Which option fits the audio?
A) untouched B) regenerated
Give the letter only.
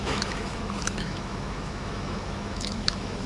B